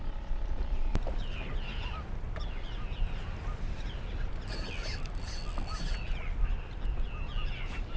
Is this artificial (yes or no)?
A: no